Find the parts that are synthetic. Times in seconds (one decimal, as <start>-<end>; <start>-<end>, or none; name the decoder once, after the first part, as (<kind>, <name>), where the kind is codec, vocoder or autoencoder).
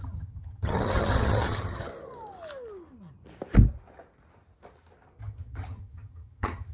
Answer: 0.0-1.9 (vocoder, HiFi-GAN); 5.2-6.7